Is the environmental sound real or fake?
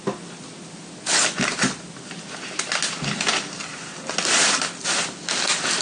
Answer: real